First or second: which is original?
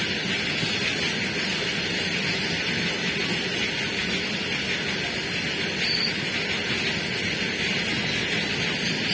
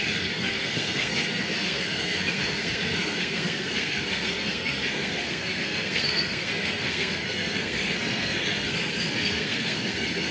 first